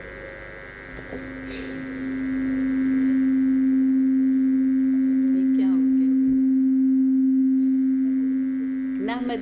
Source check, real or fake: real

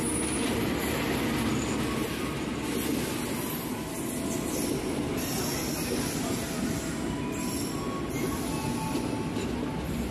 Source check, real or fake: real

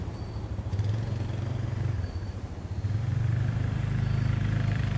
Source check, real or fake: fake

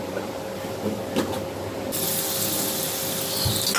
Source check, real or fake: real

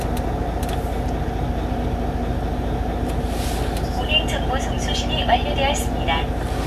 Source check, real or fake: real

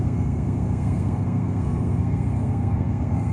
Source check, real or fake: fake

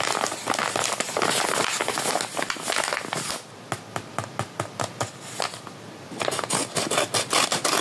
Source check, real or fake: real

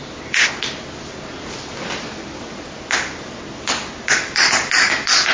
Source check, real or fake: real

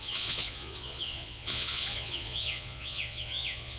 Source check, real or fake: fake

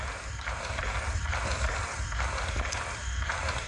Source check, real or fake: fake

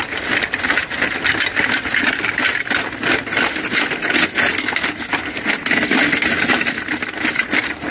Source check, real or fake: real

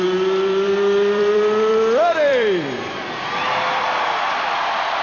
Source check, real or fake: fake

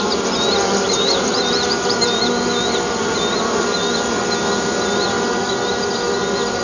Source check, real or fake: real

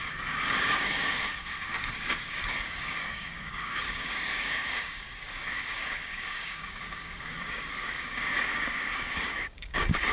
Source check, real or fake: fake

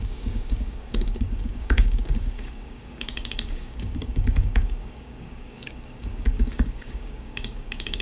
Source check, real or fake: fake